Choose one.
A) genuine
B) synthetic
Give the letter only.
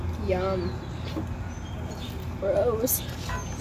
A